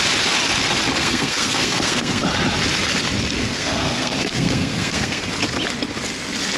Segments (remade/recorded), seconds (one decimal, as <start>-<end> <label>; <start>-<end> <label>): 0.0-1.0 recorded; 1.0-2.2 remade; 2.2-3.4 recorded; 3.4-5.3 remade; 5.3-6.6 recorded